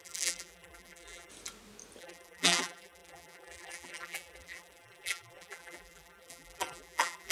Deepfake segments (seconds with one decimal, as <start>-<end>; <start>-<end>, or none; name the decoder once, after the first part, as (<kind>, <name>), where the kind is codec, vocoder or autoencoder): 0.0-1.3 (vocoder, BigVGAN v2); 2.0-7.3